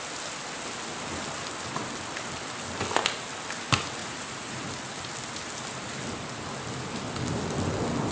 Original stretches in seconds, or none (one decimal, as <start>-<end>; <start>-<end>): 0.0-4.0; 4.7-8.1